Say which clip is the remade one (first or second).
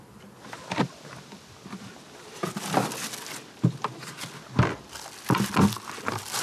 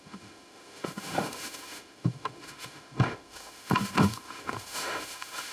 second